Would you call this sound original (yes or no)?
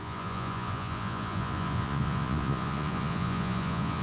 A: no